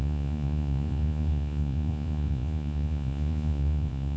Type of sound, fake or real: fake